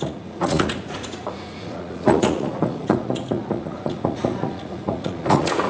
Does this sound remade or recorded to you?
remade